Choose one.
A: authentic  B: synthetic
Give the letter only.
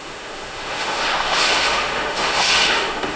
B